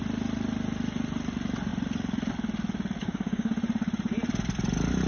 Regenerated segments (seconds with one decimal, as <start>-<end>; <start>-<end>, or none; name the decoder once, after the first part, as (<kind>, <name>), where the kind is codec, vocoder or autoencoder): 3.0-3.5 (codec, DAC)